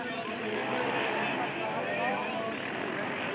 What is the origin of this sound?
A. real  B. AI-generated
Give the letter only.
A